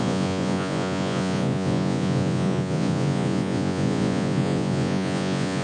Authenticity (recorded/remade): remade